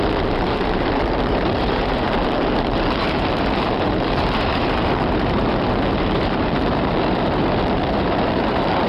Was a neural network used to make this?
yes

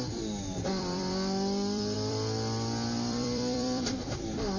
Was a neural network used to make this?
yes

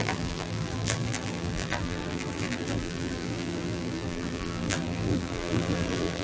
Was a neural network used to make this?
yes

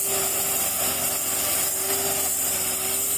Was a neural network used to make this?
no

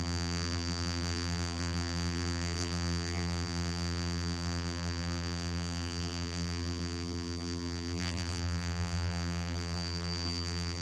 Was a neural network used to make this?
yes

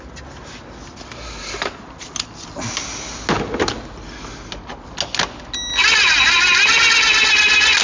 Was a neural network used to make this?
no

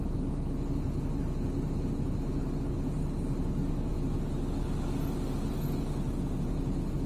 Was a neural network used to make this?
no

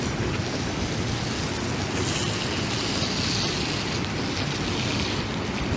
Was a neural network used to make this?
no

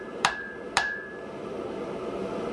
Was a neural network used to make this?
yes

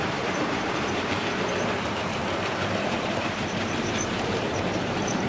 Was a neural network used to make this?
yes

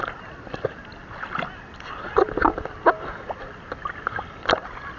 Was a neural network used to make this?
yes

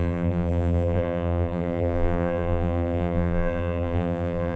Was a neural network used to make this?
yes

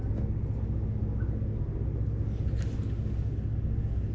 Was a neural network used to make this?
no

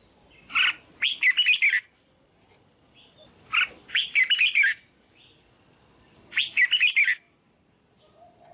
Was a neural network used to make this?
no